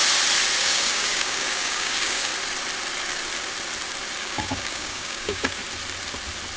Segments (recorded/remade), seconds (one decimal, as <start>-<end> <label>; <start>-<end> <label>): 0.0-0.6 recorded; 0.6-2.3 remade; 2.3-4.2 recorded; 4.2-5.6 remade; 5.6-6.6 recorded